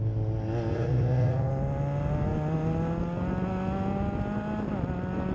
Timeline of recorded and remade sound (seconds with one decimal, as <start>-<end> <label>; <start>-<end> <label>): 0.0-0.7 recorded; 0.7-1.5 remade; 1.5-5.3 recorded